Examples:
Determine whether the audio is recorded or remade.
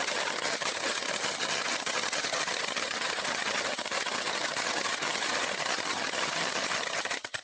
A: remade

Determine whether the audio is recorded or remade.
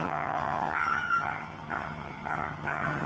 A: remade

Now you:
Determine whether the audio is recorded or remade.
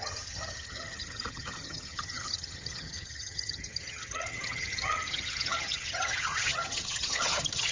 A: remade